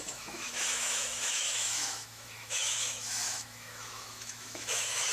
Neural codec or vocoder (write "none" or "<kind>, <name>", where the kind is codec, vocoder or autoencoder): autoencoder, DAC-VAE